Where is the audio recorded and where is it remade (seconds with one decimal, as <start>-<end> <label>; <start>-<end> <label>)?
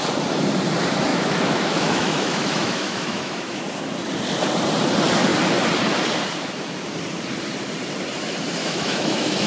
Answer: 0.0-1.1 recorded; 1.1-3.6 remade; 3.6-8.6 recorded; 8.6-9.5 remade